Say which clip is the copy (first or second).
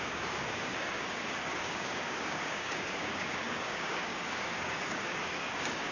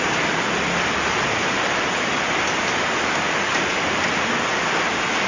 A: first